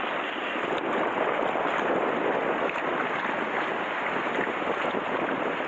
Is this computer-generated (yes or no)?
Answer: no